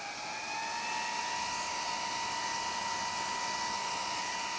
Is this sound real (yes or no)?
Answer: yes